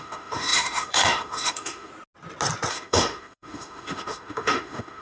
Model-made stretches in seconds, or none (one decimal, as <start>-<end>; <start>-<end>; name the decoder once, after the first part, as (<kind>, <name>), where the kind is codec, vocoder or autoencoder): 0.0-1.9 (autoencoder, DAC-VAE); 2.7-5.0